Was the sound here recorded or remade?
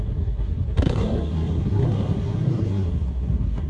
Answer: remade